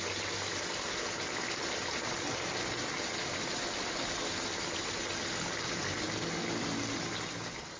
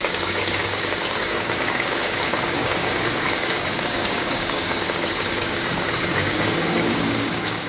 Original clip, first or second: first